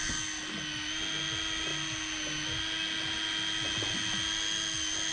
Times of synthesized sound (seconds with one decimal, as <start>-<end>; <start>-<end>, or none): none